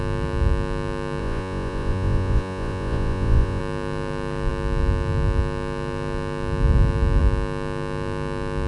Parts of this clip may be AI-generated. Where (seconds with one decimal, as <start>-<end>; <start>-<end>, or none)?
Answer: 1.2-3.6